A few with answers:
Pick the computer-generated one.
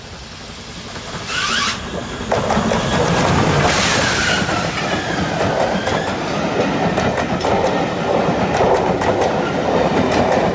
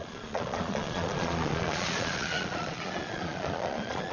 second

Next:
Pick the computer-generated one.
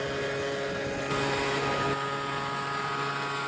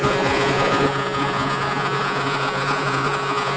second